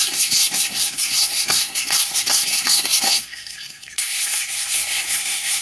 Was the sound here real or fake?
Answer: fake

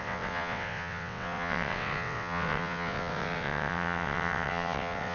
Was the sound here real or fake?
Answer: fake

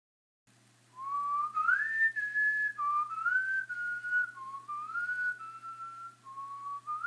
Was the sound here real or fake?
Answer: real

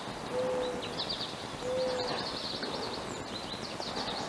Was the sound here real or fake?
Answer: real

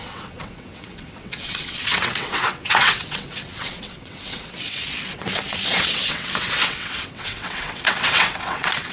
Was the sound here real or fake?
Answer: fake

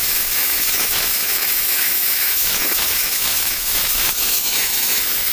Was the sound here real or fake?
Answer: fake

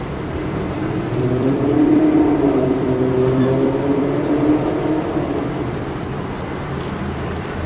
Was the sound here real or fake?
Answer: fake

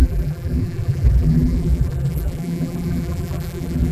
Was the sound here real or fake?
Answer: fake